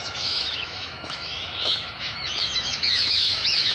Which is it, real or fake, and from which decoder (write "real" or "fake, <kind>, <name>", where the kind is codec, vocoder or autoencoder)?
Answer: fake, autoencoder, DAC-VAE